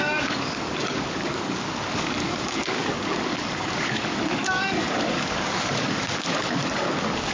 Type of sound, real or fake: fake